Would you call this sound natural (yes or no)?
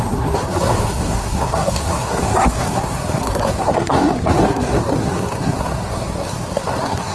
no